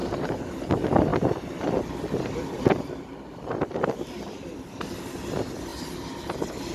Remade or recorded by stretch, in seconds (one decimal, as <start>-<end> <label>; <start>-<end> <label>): 0.0-0.6 remade; 0.6-1.1 recorded; 1.1-5.0 remade; 5.0-6.7 recorded